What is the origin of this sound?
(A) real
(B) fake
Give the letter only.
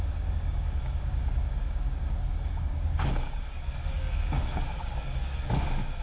B